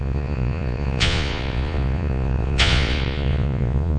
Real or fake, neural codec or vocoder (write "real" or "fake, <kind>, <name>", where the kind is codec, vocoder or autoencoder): fake, vocoder, Vocos